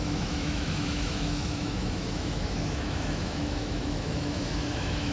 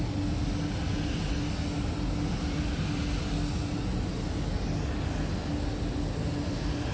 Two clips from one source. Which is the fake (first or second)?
first